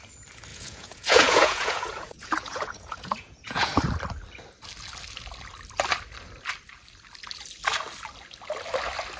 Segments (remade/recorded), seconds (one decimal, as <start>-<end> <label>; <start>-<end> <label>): 0.0-0.5 recorded; 0.5-3.8 remade; 3.8-9.2 recorded